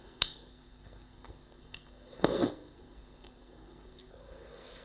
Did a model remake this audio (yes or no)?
yes